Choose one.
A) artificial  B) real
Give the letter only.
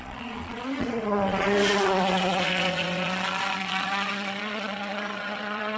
A